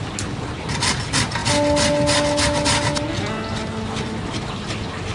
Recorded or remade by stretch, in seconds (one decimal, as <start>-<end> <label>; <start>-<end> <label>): 0.0-5.1 recorded